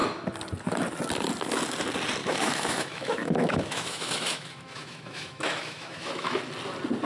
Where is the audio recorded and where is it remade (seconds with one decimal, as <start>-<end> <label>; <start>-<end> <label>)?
0.0-2.2 recorded; 2.2-6.4 remade; 6.4-7.0 recorded